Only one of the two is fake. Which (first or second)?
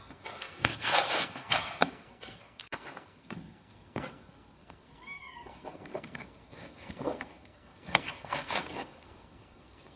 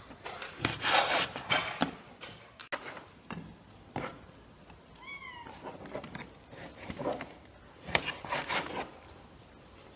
first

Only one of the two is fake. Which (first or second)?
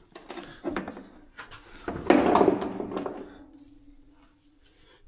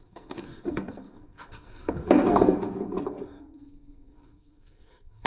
second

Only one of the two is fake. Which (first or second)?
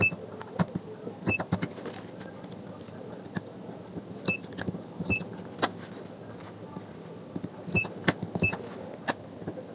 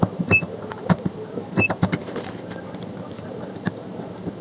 second